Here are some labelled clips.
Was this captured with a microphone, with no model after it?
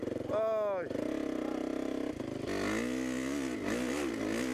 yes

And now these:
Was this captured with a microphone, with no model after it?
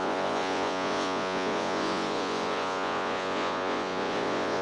no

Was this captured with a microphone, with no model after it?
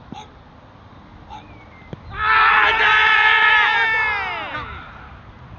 yes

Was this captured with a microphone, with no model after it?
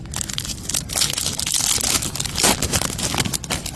yes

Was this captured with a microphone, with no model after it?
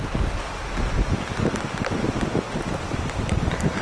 yes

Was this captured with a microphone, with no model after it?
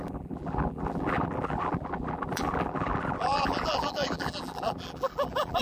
no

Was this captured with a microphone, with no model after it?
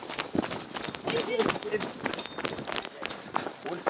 yes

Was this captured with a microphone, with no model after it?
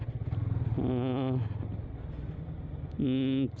yes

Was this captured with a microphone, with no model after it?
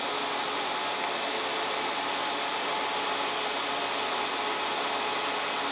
yes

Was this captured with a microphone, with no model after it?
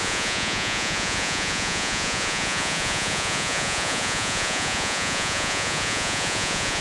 no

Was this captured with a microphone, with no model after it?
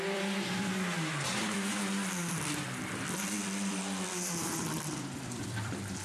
no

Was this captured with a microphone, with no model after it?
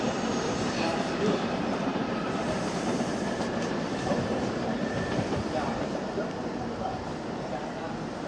no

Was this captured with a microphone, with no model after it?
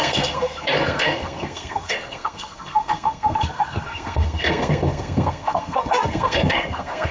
no